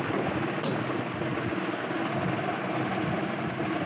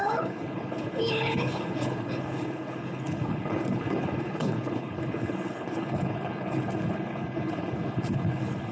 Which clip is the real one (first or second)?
first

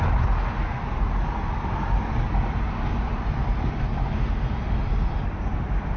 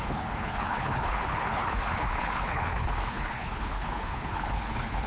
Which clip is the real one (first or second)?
first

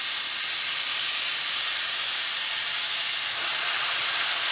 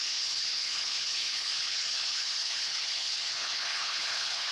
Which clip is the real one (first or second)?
first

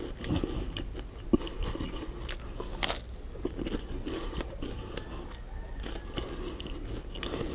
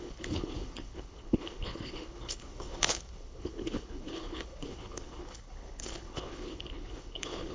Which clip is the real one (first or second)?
first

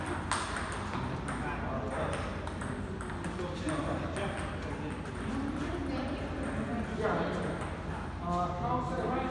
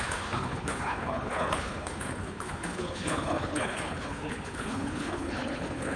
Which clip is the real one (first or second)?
first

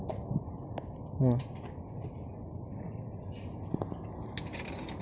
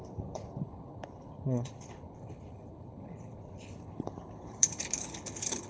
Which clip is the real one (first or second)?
first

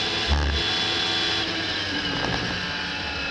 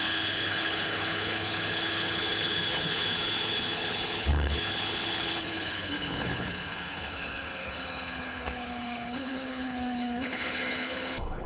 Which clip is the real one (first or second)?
first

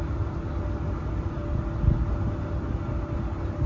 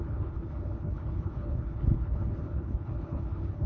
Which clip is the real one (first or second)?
first